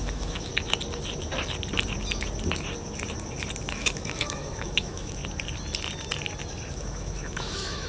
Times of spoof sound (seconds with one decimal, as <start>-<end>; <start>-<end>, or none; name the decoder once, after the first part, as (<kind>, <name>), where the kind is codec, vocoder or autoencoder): 0.0-0.5 (autoencoder, DAC-VAE); 3.6-5.2; 6.7-7.9